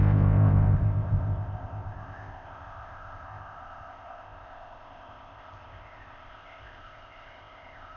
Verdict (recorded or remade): remade